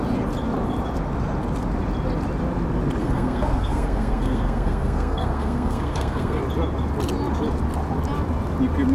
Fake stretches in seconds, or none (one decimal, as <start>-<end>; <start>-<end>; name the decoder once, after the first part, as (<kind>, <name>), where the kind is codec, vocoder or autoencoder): 3.0-6.4 (codec, SNAC)